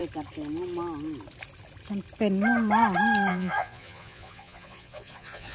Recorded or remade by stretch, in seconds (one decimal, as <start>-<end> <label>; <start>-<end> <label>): 0.0-3.3 recorded; 3.3-5.5 remade